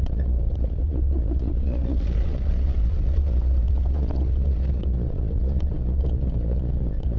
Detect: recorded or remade remade